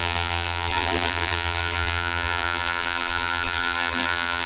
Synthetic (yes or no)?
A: yes